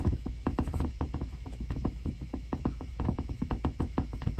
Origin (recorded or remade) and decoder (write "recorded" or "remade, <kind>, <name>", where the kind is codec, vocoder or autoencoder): remade, autoencoder, DAC-VAE